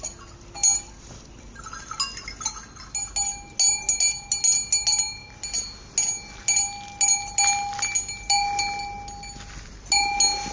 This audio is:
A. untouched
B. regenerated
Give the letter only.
A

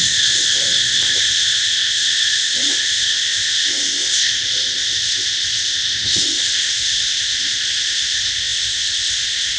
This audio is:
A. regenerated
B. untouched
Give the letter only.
A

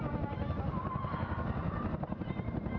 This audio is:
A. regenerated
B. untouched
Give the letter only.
B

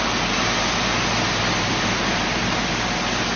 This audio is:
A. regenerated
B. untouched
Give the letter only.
B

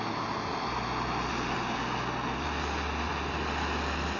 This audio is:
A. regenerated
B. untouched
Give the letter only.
B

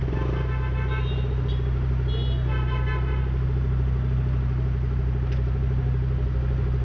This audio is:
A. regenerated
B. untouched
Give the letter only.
B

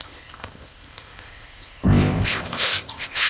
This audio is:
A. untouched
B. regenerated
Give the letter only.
B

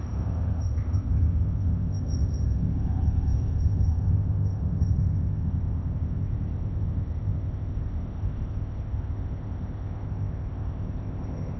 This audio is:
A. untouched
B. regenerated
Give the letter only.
B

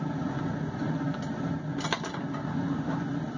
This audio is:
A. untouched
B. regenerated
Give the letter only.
A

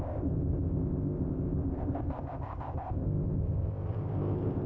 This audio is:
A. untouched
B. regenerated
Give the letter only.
B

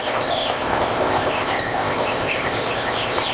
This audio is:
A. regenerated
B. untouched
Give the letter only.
A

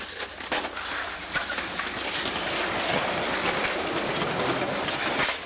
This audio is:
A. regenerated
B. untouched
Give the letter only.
B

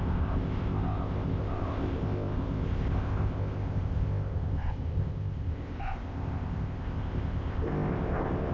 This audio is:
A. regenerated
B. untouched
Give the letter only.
A